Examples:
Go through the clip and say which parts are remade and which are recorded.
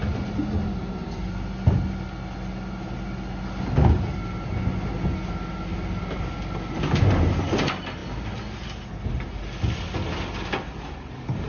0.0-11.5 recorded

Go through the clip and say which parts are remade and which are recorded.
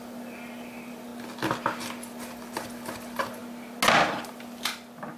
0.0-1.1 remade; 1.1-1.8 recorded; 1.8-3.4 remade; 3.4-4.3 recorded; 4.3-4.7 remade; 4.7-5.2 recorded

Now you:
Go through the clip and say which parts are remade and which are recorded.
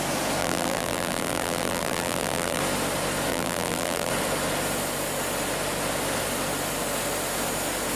0.0-0.4 recorded; 0.4-2.6 remade; 2.6-3.3 recorded; 3.3-4.1 remade; 4.1-8.0 recorded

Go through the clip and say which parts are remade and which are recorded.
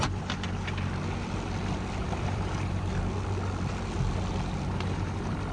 0.0-2.0 recorded; 2.0-3.0 remade; 3.0-5.5 recorded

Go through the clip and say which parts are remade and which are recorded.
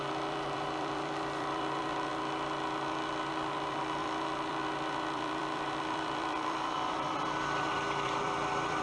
0.0-2.1 remade; 2.1-3.3 recorded; 3.3-8.8 remade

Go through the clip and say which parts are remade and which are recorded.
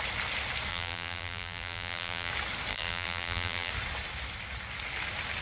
0.0-0.7 recorded; 0.7-2.3 remade; 2.3-2.7 recorded; 2.7-3.7 remade; 3.7-5.4 recorded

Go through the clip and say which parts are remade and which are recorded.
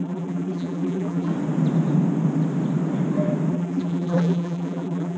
0.0-1.3 remade; 1.3-3.5 recorded; 3.5-5.2 remade